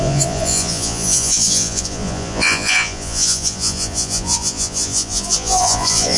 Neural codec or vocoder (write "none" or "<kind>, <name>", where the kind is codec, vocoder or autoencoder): vocoder, Vocos